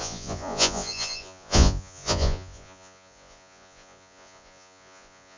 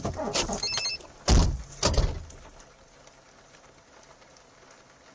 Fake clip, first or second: first